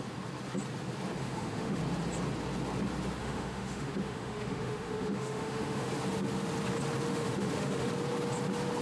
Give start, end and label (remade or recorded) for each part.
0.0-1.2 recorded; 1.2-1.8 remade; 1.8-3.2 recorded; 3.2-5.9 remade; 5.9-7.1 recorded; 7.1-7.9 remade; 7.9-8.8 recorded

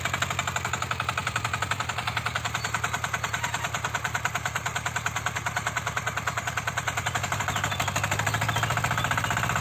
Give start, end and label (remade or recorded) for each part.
0.0-1.2 recorded; 1.2-6.4 remade; 6.4-9.6 recorded

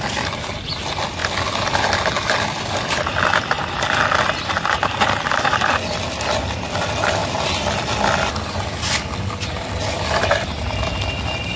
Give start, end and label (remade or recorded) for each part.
0.0-11.6 recorded

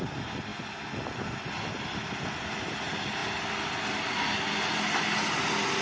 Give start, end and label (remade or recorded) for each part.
0.0-5.8 recorded